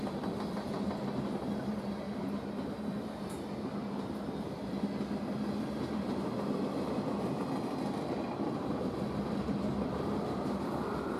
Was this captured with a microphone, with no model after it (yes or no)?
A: yes